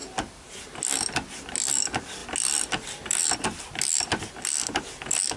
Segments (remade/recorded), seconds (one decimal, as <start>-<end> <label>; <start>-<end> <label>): 0.0-5.4 recorded